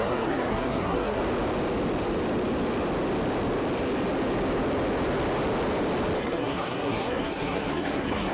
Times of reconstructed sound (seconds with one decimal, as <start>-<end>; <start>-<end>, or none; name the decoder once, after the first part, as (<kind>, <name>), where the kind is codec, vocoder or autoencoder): 0.0-1.2 (codec, SNAC); 6.2-8.3